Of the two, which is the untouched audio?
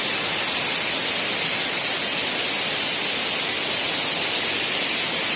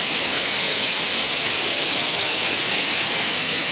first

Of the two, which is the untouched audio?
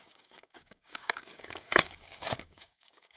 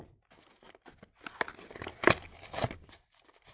second